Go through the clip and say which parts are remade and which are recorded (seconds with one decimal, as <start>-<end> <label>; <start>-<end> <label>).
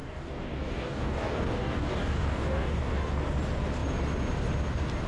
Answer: 0.0-3.1 remade; 3.1-5.1 recorded